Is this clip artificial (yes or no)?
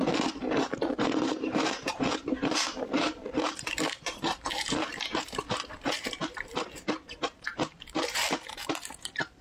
yes